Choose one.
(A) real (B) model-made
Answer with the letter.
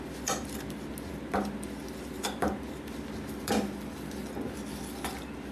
A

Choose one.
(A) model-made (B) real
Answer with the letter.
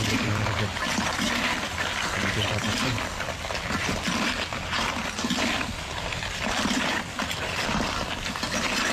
A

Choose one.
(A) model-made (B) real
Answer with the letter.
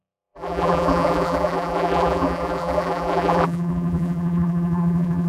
A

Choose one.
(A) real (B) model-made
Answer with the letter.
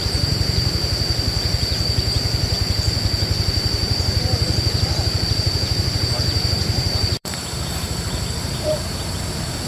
B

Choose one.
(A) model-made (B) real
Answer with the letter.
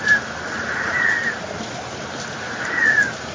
B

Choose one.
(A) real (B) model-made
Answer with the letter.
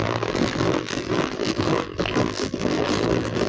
B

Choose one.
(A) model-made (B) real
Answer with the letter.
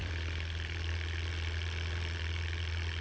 A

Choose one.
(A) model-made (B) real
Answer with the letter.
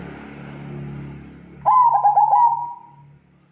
B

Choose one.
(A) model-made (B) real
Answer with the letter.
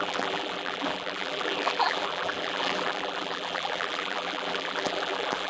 A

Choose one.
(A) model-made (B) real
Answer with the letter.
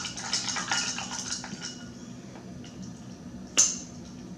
B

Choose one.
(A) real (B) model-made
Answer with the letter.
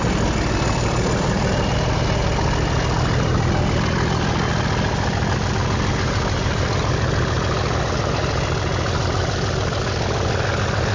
A